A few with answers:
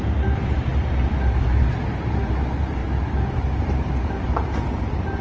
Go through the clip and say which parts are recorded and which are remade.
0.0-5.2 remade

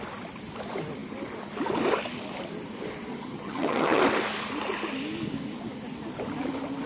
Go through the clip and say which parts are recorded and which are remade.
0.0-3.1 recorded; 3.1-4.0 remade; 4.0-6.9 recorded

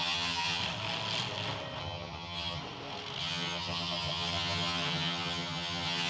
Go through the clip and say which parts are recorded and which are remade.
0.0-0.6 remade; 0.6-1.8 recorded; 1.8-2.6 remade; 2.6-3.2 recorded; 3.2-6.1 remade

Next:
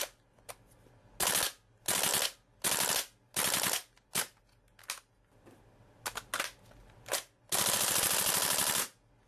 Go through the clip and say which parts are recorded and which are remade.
0.0-9.3 recorded

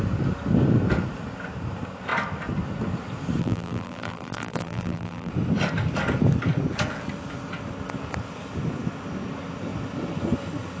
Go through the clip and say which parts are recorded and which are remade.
0.0-3.4 recorded; 3.4-5.3 remade; 5.3-10.8 recorded

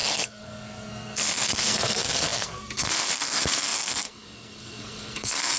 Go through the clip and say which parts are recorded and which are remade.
0.0-5.6 remade